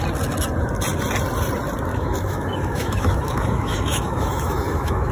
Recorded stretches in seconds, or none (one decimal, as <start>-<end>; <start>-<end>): 0.0-1.9